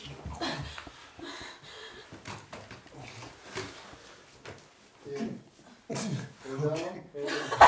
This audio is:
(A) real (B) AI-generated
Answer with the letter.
A